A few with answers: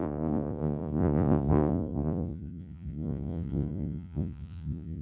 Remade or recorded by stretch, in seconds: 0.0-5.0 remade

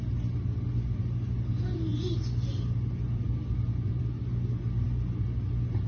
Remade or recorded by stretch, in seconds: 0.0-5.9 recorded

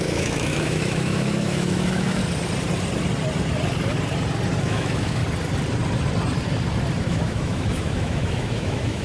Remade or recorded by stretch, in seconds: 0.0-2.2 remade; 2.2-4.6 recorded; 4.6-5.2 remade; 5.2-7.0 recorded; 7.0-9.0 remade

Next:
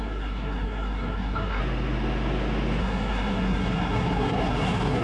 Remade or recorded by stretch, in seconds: 0.0-1.6 remade; 1.6-2.8 recorded; 2.8-5.0 remade

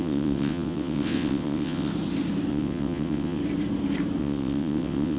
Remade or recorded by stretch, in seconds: 0.0-1.9 remade; 1.9-2.5 recorded; 2.5-3.4 remade; 3.4-4.2 recorded; 4.2-5.2 remade

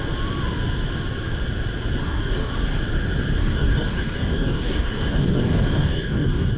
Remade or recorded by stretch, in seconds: 0.0-2.0 recorded; 2.0-2.5 remade; 2.5-3.4 recorded; 3.4-6.6 remade

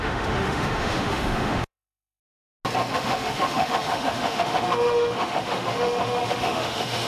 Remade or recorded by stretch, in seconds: 0.0-2.2 remade; 2.2-2.9 recorded; 2.9-7.1 remade

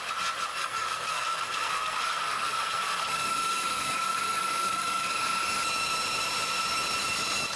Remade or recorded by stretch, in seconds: 0.0-0.5 recorded; 0.5-5.1 remade; 5.1-7.6 recorded